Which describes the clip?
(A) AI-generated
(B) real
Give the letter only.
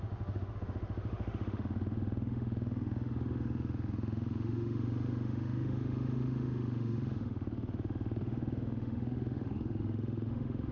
A